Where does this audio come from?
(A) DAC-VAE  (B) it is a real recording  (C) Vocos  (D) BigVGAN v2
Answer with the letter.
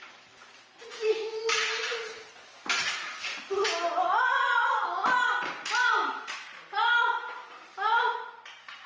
B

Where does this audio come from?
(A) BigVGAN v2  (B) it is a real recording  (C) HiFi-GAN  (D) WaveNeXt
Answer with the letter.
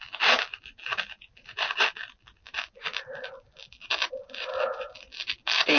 B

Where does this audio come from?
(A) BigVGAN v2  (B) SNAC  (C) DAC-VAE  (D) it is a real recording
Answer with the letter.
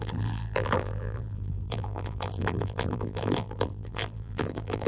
A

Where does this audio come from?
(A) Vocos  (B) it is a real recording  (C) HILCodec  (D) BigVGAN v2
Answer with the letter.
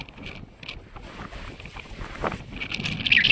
B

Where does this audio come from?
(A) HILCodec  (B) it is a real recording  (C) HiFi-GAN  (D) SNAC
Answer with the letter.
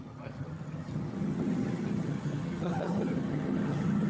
C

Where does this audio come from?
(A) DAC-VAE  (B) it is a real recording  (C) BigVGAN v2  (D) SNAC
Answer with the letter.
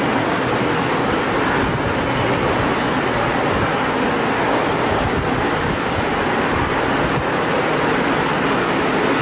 B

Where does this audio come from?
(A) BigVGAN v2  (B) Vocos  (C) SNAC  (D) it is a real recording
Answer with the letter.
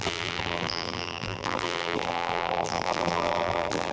A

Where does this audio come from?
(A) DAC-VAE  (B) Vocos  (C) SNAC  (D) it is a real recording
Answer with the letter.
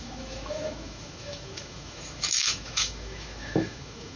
A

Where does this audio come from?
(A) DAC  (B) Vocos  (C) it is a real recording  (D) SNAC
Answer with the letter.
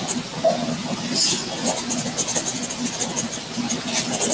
C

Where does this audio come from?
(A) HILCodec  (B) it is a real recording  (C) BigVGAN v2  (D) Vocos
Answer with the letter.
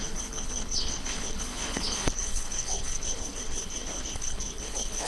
A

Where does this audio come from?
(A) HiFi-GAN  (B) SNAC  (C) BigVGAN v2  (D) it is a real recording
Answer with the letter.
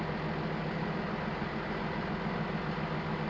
D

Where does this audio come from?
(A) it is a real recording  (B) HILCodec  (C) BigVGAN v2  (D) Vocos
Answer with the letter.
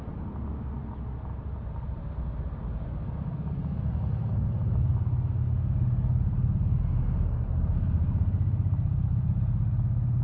A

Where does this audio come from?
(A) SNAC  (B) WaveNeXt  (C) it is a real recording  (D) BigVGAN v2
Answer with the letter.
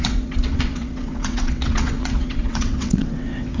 B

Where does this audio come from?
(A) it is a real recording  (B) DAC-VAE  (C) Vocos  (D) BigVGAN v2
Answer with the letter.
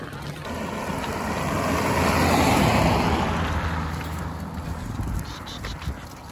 A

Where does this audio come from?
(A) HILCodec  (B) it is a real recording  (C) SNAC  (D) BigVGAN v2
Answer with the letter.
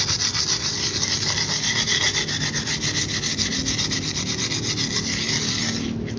B